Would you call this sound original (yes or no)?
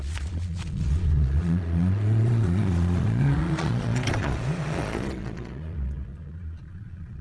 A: no